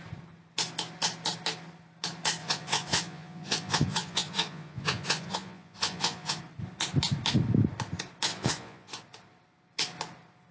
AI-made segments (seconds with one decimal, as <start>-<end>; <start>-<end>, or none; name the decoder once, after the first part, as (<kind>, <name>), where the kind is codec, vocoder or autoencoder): 2.4-6.4 (vocoder, Vocos); 8.3-9.0